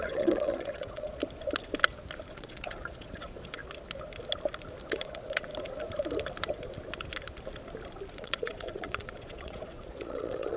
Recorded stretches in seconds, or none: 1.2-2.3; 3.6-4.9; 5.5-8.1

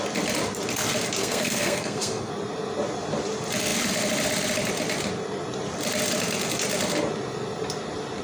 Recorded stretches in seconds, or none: 0.0-1.2; 2.3-8.2

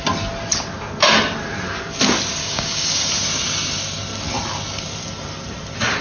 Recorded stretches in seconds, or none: 0.0-2.4; 3.1-6.0

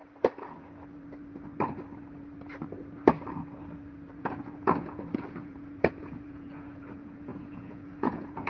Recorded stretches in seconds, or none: 0.0-4.2

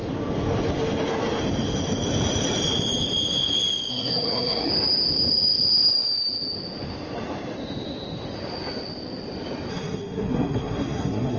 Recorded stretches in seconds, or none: 0.0-3.9; 4.7-9.7